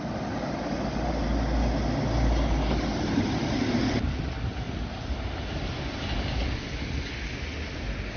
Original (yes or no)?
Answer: yes